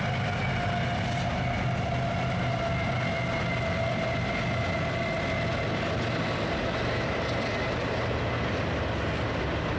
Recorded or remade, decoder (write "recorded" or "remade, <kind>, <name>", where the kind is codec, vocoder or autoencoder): recorded